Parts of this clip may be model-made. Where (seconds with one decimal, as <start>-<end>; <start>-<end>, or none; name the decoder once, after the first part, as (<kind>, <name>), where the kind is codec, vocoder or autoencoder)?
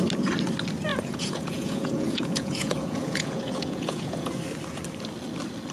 0.9-4.3 (vocoder, Vocos)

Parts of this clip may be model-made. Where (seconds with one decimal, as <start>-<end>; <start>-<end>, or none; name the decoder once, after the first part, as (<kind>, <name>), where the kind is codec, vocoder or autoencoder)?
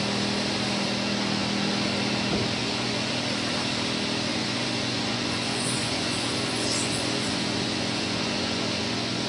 2.6-3.1 (vocoder, Vocos); 4.3-9.3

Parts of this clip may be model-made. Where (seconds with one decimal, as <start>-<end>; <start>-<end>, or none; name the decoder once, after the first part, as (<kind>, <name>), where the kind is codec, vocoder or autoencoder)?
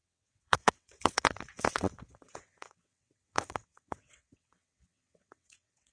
0.0-5.9 (vocoder, WaveNeXt)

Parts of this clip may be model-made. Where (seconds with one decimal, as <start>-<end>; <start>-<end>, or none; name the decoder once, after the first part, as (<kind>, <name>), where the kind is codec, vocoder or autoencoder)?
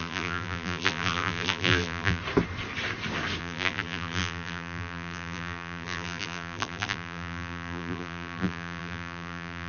0.0-2.2 (vocoder, BigVGAN v2); 3.4-9.7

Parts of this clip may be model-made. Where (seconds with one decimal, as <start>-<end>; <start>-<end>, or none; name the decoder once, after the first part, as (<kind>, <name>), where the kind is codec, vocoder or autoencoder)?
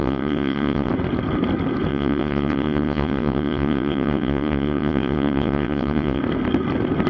0.0-0.9 (vocoder, WaveNeXt); 1.9-6.2